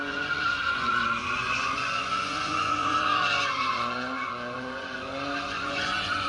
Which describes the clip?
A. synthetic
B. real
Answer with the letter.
A